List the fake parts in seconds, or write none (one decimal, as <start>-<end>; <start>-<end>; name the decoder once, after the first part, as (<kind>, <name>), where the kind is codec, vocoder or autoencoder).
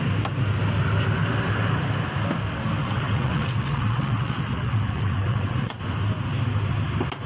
2.8-5.8 (vocoder, WaveNeXt)